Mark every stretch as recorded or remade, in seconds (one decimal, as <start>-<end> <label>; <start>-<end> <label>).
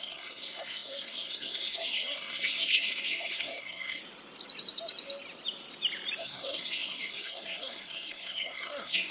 0.0-4.0 remade; 4.0-6.2 recorded; 6.2-9.1 remade